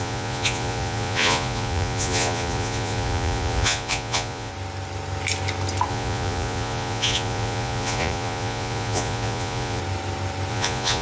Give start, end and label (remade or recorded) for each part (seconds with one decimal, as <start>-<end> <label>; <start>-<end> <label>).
0.0-4.5 remade; 4.5-5.9 recorded; 5.9-9.8 remade; 9.8-10.5 recorded; 10.5-11.0 remade